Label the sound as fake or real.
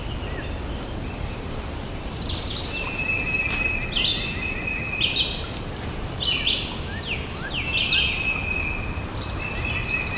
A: real